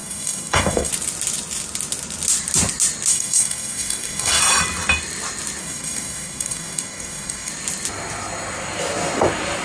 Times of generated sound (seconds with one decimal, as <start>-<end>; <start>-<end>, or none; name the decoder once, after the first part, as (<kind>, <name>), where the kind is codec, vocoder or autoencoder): 0.0-0.9 (codec, DAC); 3.1-4.4; 5.6-7.5